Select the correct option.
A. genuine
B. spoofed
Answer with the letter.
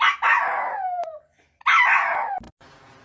A